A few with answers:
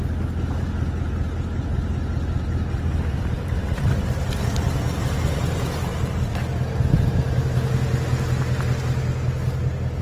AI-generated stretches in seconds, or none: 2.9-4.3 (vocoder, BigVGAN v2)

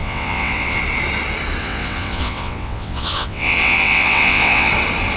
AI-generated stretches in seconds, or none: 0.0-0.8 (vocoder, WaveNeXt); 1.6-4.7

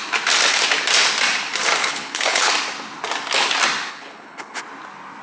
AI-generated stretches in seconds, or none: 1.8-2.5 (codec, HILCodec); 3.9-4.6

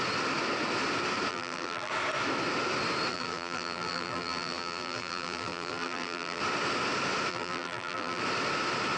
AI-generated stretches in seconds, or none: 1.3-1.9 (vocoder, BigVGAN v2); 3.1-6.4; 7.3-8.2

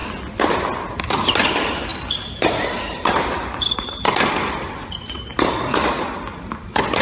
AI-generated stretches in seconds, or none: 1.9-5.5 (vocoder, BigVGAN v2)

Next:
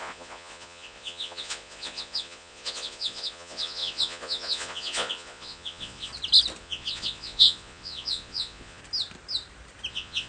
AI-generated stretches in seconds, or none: 0.0-6.1 (vocoder, Vocos); 6.6-8.8; 9.9-10.3

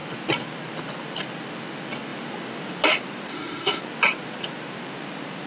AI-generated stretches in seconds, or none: 3.3-3.8 (autoencoder, DAC-VAE)